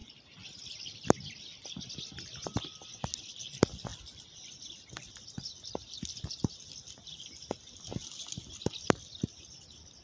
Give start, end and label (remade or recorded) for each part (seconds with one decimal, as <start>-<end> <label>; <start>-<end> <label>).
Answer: 0.0-10.0 recorded